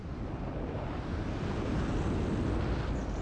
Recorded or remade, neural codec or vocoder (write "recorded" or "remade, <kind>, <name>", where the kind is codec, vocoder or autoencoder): recorded